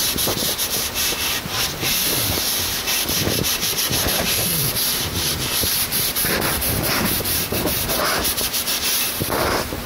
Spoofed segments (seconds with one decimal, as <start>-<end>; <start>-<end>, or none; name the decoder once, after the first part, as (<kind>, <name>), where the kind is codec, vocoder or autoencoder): 1.4-9.9 (vocoder, BigVGAN v2)